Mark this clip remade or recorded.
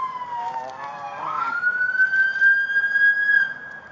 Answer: recorded